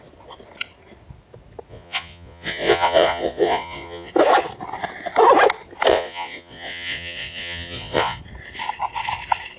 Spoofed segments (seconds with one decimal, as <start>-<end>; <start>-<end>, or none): 1.7-4.1; 5.9-8.2